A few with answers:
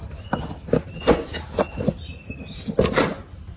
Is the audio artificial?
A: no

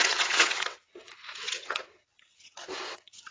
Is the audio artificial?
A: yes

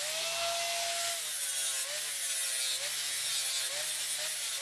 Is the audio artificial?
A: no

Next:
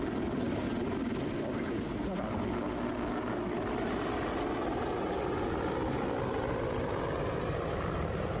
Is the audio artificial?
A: no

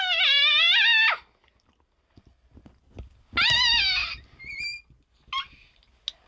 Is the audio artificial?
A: no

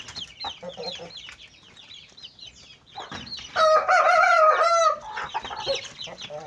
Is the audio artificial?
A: no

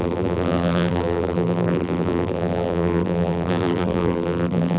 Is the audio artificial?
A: yes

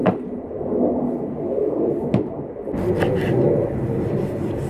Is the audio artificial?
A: no